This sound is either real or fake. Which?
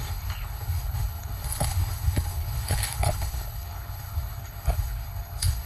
fake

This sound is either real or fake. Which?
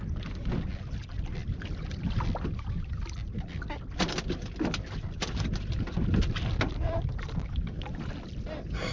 real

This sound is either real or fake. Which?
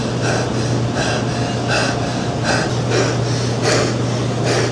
real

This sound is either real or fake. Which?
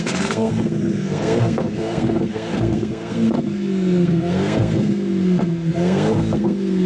fake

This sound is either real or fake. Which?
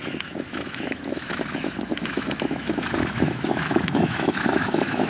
fake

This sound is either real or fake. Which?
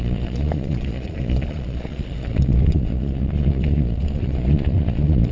fake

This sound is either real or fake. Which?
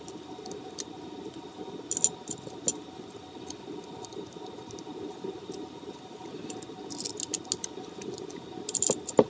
real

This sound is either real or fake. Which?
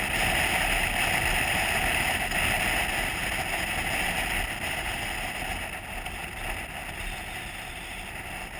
real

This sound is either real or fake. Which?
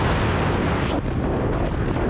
real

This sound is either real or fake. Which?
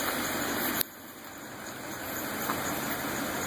real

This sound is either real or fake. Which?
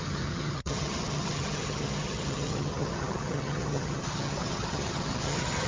fake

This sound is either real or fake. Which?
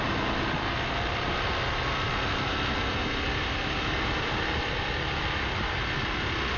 real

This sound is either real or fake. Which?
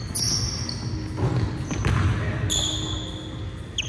real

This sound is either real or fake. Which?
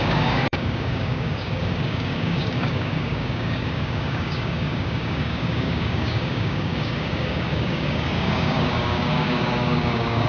fake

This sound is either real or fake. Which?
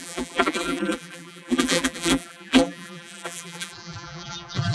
fake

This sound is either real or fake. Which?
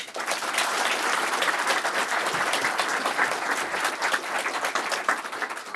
real